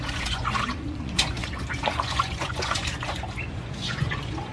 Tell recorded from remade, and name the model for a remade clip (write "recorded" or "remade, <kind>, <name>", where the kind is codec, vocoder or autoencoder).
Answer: remade, vocoder, Vocos